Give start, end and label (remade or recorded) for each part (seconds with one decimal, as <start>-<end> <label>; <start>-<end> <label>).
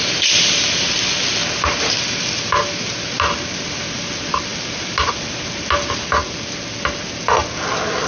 0.0-8.1 recorded